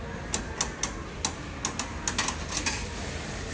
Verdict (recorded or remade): recorded